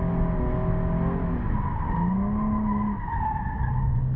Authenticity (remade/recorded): recorded